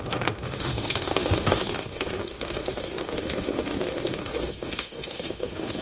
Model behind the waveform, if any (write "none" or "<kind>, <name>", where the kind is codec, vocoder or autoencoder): autoencoder, DAC-VAE